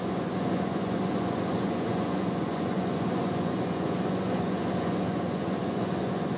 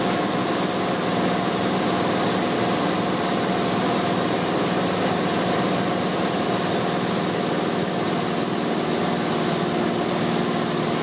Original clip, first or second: second